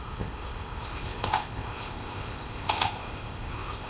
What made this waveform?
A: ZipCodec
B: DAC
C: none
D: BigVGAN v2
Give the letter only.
A